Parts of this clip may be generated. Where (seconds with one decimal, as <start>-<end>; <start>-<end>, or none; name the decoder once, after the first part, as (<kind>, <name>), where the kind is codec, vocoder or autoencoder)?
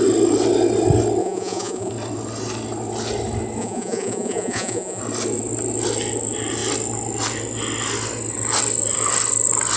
1.2-1.9 (vocoder, Vocos); 3.6-5.0